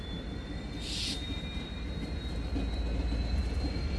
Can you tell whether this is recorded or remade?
recorded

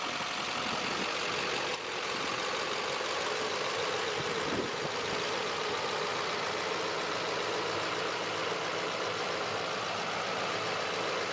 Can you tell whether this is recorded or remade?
recorded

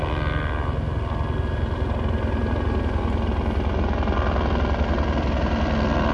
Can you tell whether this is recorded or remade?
recorded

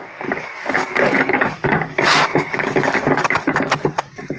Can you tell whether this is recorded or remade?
remade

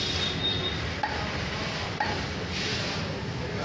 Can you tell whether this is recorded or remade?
recorded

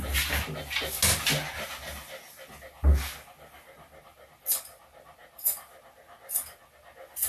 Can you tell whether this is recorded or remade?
recorded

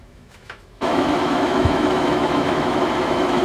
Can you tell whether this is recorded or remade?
remade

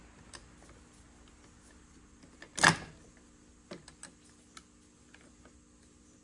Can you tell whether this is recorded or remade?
recorded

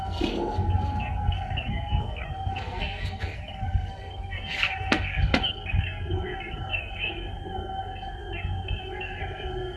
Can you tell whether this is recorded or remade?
remade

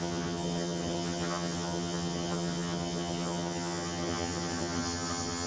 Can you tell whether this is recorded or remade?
remade